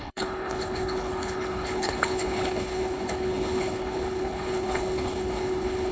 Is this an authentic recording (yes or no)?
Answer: no